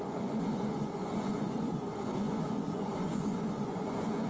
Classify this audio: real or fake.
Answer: fake